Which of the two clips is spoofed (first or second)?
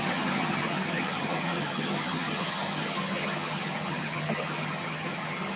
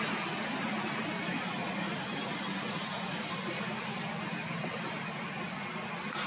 first